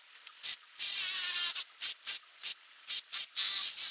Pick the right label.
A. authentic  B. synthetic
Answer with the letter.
A